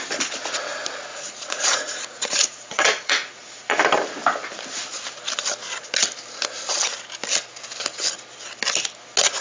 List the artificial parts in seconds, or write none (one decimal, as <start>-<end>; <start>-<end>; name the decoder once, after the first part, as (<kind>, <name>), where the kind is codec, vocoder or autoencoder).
1.1-3.8 (vocoder, Vocos)